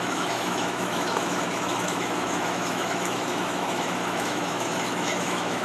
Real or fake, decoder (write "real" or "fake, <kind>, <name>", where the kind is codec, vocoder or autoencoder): fake, autoencoder, DAC-VAE